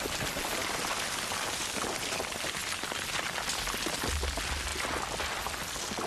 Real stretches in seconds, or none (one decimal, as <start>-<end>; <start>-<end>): 0.0-6.1